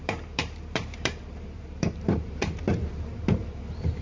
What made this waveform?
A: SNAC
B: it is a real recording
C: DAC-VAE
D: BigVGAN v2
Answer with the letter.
D